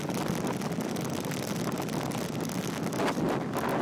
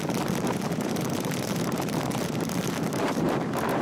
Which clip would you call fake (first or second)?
second